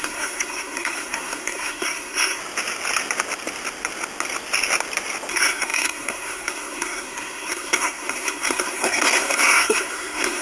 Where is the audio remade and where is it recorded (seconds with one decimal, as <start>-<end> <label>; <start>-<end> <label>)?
0.0-2.4 remade; 2.4-5.3 recorded; 5.3-10.4 remade